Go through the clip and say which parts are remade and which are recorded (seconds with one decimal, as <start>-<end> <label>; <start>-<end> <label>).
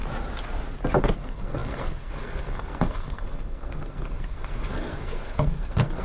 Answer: 0.0-1.0 recorded; 1.0-6.0 remade